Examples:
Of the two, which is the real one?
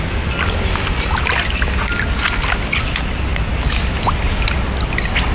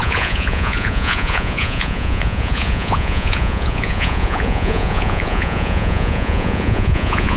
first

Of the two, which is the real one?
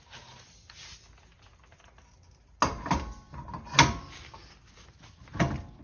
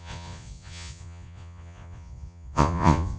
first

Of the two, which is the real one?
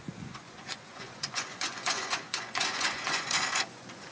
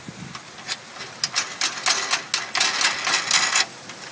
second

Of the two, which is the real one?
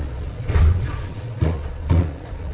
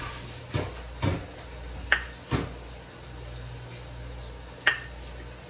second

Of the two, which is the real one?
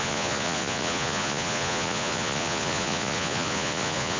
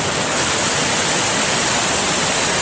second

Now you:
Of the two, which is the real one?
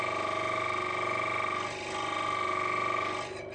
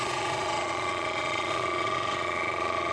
first